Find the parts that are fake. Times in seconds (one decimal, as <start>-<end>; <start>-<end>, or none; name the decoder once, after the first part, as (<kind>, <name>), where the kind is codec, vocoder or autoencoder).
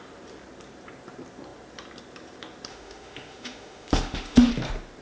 2.7-4.5 (autoencoder, DAC-VAE)